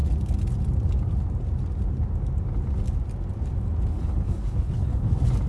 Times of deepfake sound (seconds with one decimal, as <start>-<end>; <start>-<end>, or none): 3.9-5.1